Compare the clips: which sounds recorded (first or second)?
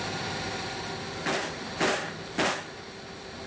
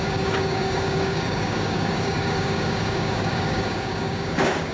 first